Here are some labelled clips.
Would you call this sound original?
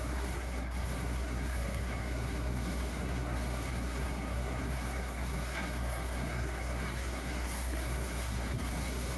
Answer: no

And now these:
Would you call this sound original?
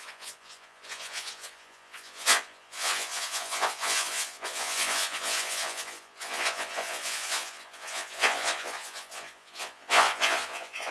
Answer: no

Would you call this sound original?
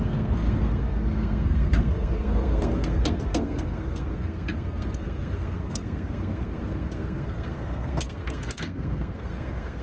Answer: no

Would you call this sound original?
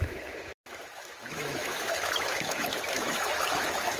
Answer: no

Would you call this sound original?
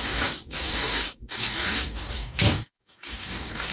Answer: no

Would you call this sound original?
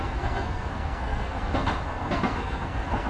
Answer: no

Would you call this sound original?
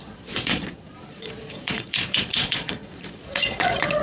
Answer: no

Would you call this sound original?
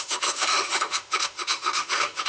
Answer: no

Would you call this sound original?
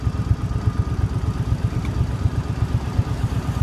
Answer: yes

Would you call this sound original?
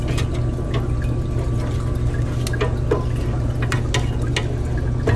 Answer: yes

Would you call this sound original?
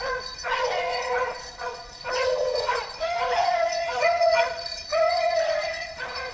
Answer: no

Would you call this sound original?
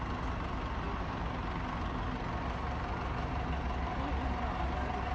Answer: yes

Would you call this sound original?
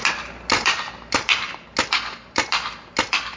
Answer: yes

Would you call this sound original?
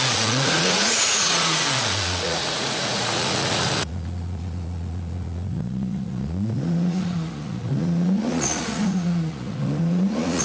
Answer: no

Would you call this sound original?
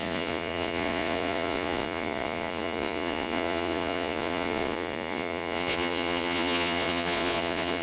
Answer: no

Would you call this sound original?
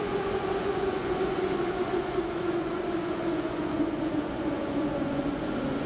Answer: no